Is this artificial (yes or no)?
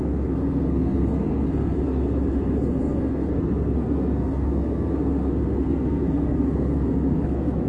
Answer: yes